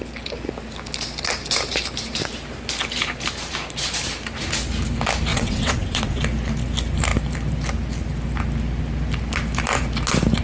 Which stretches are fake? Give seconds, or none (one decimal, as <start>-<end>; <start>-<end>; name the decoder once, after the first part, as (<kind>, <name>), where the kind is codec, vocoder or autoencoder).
5.3-6.2 (vocoder, WaveNeXt)

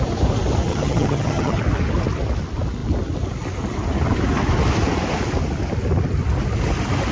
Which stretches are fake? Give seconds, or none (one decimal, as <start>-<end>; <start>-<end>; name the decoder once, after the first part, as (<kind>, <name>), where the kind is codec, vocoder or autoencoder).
0.7-1.6 (vocoder, HiFi-GAN)

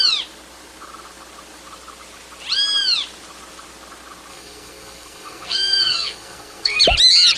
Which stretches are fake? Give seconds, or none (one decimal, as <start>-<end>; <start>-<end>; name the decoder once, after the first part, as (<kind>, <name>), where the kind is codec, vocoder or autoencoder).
4.3-6.8 (codec, SNAC)

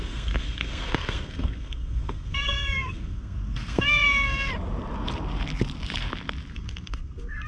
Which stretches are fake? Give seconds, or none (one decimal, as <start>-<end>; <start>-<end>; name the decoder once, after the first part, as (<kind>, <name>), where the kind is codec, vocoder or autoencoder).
0.0-4.5 (codec, SNAC); 6.5-7.5

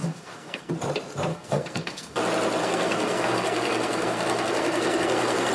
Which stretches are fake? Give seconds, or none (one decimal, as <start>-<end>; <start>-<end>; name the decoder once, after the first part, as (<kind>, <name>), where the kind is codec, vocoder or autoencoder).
0.0-0.7 (codec, SNAC); 1.3-2.2; 2.6-5.5

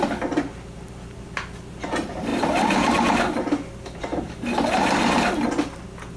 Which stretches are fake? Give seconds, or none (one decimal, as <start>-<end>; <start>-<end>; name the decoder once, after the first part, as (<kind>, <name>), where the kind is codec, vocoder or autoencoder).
none

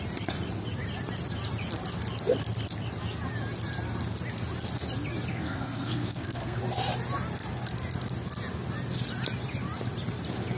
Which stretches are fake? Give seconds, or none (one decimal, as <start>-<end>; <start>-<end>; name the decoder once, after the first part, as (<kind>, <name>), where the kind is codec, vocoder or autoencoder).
5.3-6.6 (codec, SNAC)